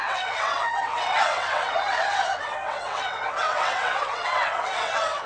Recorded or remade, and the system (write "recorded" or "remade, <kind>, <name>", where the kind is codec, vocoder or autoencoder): remade, vocoder, WaveNeXt